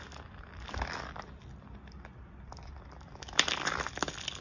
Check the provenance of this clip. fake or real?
real